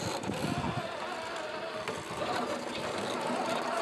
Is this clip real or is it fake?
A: real